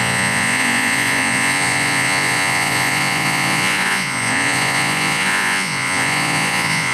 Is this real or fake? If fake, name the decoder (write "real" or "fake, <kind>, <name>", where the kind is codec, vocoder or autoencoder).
fake, vocoder, Vocos